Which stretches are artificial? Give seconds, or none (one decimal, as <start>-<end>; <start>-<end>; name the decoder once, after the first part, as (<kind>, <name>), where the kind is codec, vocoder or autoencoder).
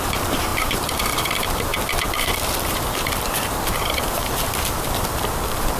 0.0-1.7 (vocoder, BigVGAN v2); 2.3-5.8